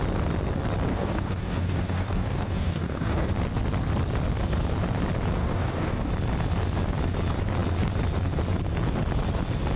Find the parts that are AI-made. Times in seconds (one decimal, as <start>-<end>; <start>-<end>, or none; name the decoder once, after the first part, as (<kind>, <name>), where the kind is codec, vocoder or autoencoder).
0.9-3.3 (codec, DAC); 5.4-6.1